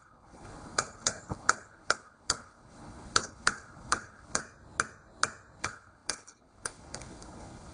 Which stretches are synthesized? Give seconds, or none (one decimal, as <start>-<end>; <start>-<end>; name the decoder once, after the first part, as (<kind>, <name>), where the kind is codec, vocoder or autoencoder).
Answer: 0.0-4.4 (codec, HILCodec); 5.6-7.7